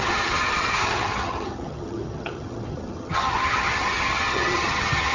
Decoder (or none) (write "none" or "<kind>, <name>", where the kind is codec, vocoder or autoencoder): vocoder, HiFi-GAN